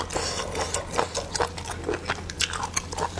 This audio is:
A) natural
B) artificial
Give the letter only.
A